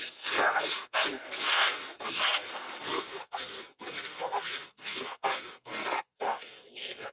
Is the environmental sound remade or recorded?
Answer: remade